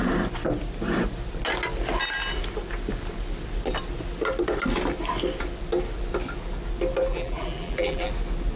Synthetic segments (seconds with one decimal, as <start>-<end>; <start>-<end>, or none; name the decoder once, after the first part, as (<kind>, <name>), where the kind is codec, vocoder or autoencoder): 7.1-8.1 (vocoder, BigVGAN v2)